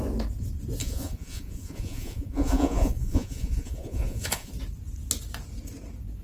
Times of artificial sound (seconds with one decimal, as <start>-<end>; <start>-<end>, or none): 0.8-4.5